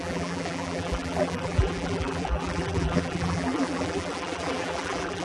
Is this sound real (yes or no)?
no